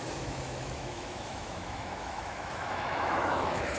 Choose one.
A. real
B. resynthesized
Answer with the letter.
B